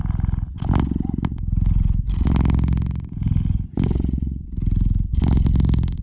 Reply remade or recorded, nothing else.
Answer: recorded